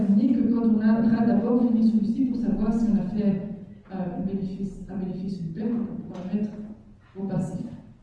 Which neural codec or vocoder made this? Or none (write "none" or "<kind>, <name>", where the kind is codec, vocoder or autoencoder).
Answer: none